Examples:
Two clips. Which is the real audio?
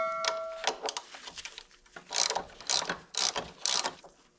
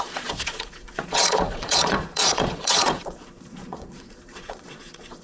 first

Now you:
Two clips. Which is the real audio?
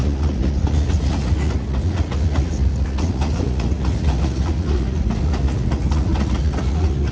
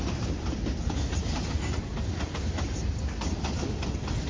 second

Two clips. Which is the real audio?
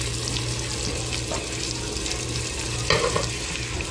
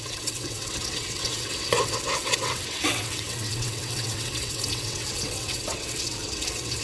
first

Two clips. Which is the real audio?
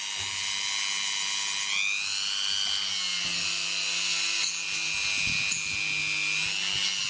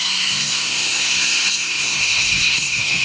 first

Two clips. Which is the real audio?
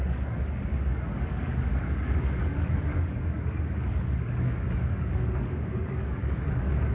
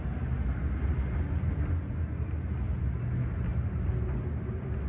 second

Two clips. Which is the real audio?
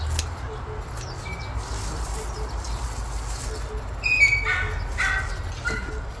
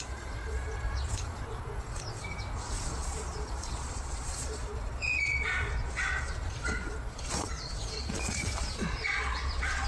first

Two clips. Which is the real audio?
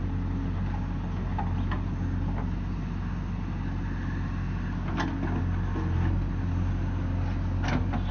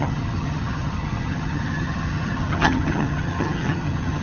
first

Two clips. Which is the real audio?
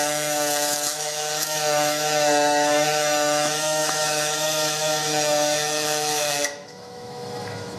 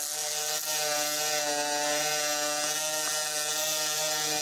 second